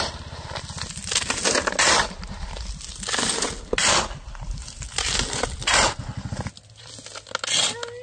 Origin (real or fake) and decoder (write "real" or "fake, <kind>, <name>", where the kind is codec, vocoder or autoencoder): real